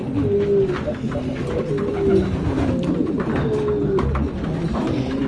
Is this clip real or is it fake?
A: real